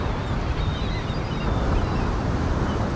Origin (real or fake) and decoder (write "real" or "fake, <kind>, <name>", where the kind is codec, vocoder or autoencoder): real